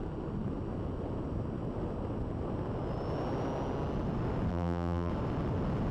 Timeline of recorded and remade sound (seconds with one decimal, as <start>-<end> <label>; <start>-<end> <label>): 0.0-4.5 recorded; 4.5-5.1 remade; 5.1-5.9 recorded